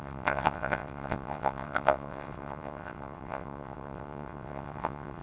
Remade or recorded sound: remade